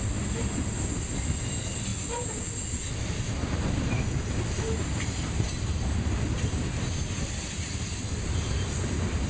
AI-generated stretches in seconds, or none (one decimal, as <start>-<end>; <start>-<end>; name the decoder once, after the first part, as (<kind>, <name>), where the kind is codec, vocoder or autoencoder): none